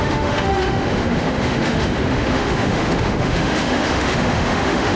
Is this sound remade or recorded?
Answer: remade